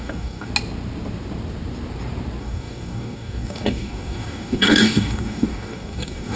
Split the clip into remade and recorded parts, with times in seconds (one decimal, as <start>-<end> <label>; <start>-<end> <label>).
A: 0.0-0.5 remade; 0.5-2.4 recorded; 2.4-6.4 remade

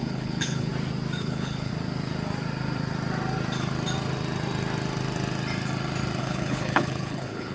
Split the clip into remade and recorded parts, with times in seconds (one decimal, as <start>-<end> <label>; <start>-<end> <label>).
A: 0.0-0.7 remade; 0.7-1.2 recorded; 1.2-1.7 remade; 1.7-6.2 recorded; 6.2-7.5 remade

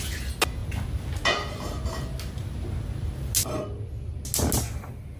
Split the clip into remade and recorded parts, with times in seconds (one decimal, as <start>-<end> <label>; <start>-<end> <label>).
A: 0.0-5.2 recorded

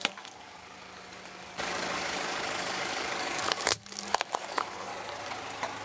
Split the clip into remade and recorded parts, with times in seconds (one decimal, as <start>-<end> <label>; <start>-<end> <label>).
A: 0.0-4.9 remade; 4.9-5.8 recorded